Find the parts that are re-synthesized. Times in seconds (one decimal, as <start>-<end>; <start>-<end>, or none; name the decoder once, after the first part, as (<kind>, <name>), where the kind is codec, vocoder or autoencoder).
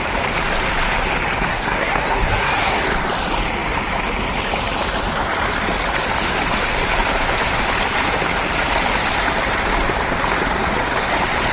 1.5-2.8 (codec, SNAC)